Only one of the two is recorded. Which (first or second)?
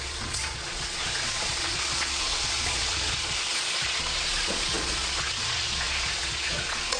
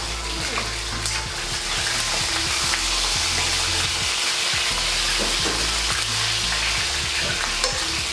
second